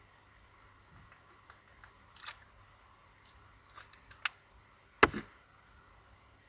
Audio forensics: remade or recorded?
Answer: recorded